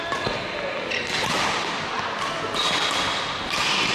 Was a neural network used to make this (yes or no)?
no